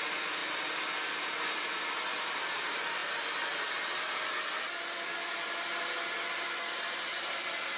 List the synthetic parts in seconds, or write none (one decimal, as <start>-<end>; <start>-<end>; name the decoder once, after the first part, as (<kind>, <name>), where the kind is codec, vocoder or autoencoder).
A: none